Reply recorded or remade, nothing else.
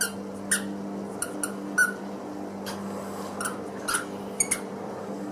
recorded